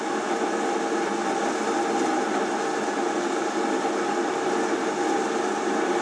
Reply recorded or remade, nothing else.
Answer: recorded